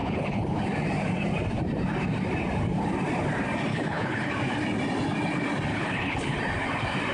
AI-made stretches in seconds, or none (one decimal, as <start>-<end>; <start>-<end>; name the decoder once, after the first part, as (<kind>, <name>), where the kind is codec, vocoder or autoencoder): 0.0-0.6 (codec, HILCodec); 3.7-4.3; 5.7-6.4